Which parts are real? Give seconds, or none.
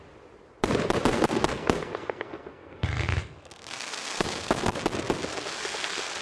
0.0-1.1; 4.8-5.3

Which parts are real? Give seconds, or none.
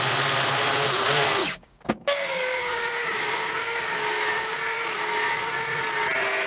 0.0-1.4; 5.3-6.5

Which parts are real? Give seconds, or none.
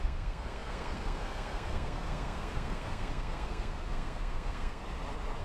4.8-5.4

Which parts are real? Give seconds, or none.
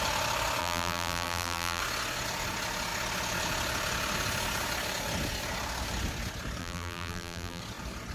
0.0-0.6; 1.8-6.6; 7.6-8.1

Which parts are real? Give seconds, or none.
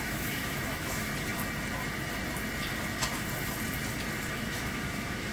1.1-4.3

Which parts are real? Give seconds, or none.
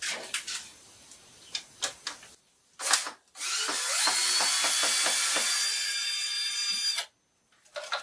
0.0-8.0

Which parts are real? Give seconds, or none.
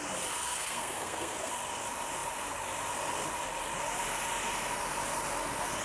0.0-0.4; 1.5-5.8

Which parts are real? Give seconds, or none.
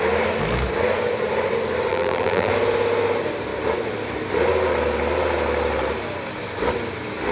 0.0-1.9; 2.5-7.3